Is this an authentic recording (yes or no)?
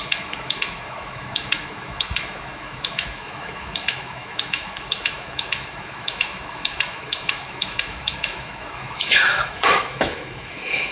no